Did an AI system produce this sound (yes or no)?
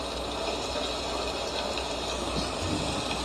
no